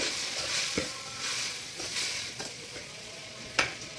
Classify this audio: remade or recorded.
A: remade